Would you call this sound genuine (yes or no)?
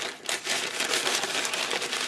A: yes